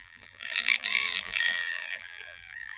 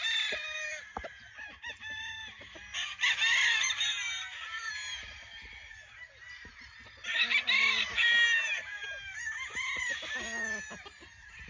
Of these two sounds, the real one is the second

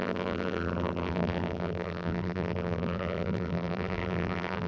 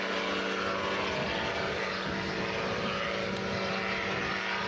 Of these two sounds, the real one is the second